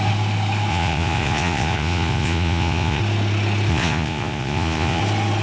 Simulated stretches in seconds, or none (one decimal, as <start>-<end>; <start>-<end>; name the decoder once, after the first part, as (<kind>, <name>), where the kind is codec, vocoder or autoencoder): 0.7-3.0 (vocoder, Vocos); 3.7-5.0